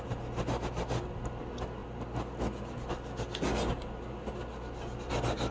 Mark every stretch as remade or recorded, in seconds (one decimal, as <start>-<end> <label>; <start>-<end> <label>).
0.0-5.5 recorded